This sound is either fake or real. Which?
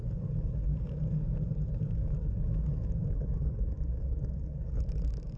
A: fake